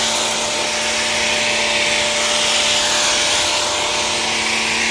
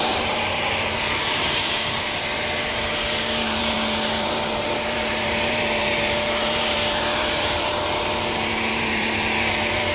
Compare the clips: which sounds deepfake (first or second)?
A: second